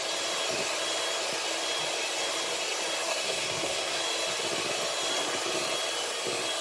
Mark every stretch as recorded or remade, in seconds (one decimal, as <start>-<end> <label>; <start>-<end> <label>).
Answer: 0.0-3.1 recorded; 3.1-4.0 remade; 4.0-6.6 recorded